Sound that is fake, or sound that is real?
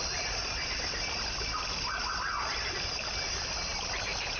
real